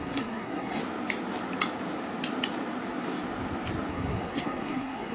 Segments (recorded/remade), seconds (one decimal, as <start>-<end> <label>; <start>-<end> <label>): 0.0-0.8 remade; 0.8-3.9 recorded; 3.9-5.1 remade

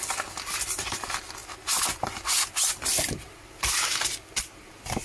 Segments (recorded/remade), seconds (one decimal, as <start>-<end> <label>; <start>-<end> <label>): 0.0-5.0 recorded

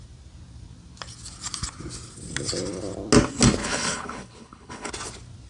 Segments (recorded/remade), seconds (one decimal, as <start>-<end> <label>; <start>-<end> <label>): 0.0-3.6 recorded; 3.6-4.9 remade; 4.9-5.5 recorded